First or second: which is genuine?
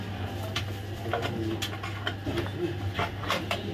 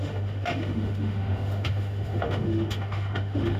first